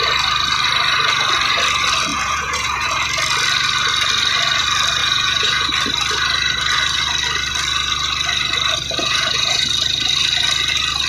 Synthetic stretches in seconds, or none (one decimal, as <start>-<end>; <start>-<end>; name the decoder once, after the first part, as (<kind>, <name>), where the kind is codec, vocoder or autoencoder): 2.1-2.9 (vocoder, Vocos); 5.0-5.7; 9.0-9.7